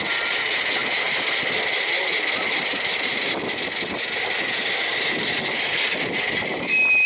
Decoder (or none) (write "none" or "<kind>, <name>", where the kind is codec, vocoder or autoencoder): none